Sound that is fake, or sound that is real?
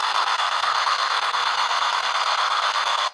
fake